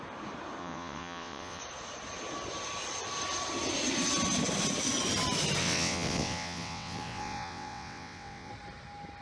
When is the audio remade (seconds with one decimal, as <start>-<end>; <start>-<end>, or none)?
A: 0.6-1.6; 5.6-8.5